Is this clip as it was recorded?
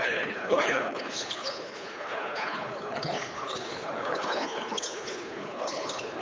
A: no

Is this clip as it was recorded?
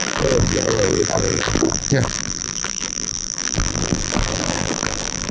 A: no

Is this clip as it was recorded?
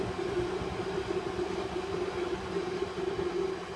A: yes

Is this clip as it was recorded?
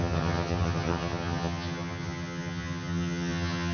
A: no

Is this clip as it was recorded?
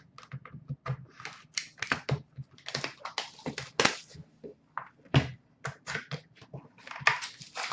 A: yes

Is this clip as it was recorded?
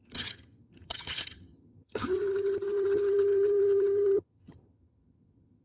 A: no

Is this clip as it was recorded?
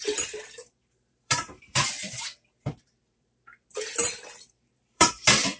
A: no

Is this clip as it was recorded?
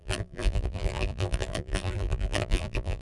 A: no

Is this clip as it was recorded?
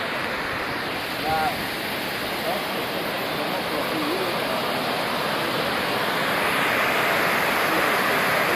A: yes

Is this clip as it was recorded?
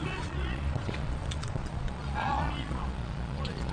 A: no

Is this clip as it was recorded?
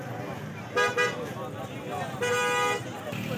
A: yes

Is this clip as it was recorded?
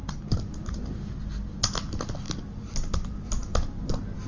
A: yes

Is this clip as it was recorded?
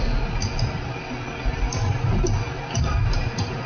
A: yes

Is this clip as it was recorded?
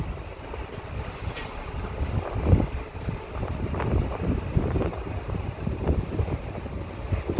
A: yes